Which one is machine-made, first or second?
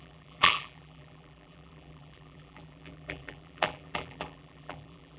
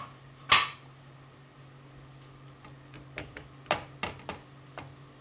first